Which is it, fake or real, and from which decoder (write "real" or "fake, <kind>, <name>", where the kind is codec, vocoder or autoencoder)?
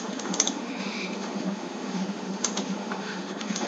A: fake, autoencoder, DAC-VAE